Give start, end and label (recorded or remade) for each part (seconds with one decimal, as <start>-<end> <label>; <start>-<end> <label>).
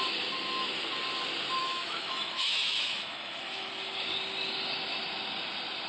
0.0-1.6 recorded; 1.6-3.7 remade; 3.7-5.9 recorded